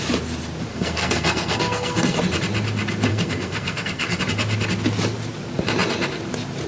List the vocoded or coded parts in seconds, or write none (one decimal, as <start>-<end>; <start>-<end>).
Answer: 0.7-2.2; 3.1-4.2